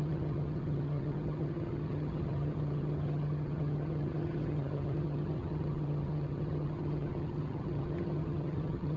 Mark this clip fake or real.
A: fake